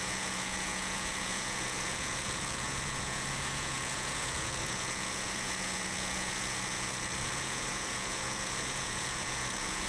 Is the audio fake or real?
fake